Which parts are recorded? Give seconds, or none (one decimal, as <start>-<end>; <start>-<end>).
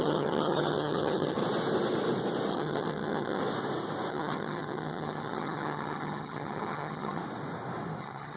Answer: 1.4-2.5; 3.4-4.1; 7.2-8.0